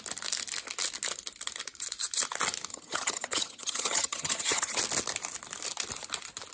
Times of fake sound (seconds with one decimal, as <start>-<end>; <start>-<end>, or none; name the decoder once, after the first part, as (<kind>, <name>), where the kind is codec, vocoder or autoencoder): 2.7-4.8 (vocoder, HiFi-GAN)